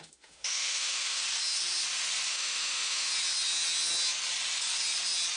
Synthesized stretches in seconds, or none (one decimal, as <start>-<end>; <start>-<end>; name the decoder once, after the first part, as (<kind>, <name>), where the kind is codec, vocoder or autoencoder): 0.0-1.2 (autoencoder, DAC-VAE); 2.3-3.1